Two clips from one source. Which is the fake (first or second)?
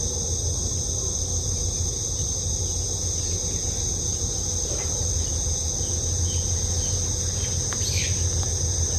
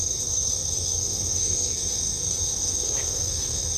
second